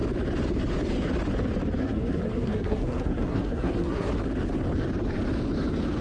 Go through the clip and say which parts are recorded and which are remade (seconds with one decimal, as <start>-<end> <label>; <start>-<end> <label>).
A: 0.0-1.8 recorded; 1.8-4.1 remade; 4.1-6.0 recorded